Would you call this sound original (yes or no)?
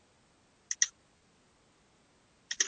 yes